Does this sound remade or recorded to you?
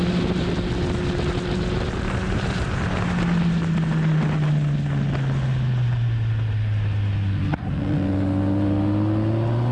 recorded